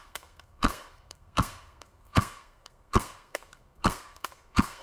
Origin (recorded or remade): remade